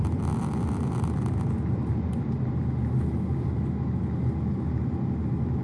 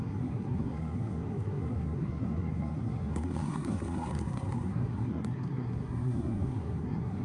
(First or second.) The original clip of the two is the first